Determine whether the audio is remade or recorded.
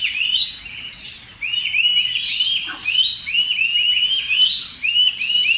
recorded